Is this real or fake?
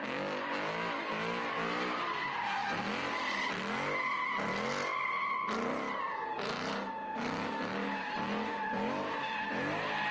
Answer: real